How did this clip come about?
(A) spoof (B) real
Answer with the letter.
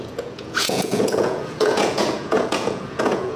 A